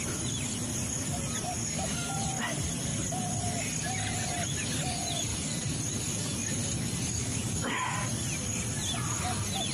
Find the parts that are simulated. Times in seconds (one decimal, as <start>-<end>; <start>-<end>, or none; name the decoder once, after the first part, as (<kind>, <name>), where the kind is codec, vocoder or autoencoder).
1.6-2.1 (codec, DAC); 7.2-7.9